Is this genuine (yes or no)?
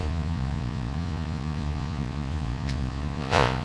no